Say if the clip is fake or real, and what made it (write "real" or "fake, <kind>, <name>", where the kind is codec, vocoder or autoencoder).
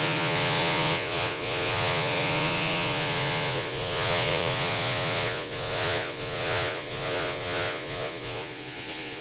fake, vocoder, Vocos